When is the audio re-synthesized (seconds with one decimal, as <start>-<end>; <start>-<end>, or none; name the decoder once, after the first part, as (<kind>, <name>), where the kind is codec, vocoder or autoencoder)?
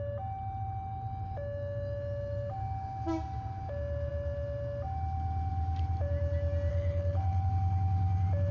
6.7-7.5 (codec, HILCodec)